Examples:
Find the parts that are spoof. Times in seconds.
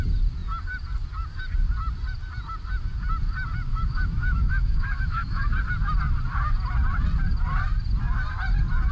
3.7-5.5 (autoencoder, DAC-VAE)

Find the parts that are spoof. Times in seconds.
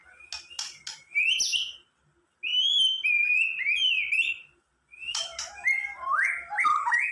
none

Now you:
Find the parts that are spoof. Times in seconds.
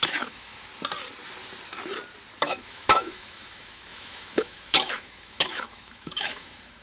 0.0-0.7 (autoencoder, DAC-VAE); 2.4-6.8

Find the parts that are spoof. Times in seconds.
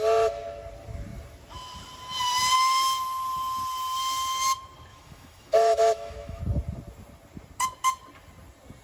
4.9-6.4 (autoencoder, DAC-VAE)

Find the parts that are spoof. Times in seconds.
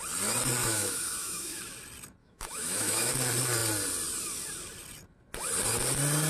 0.6-1.6 (autoencoder, DAC-VAE); 2.2-3.1